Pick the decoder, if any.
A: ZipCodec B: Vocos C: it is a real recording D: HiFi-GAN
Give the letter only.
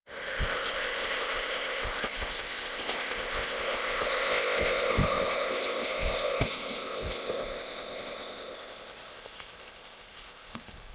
A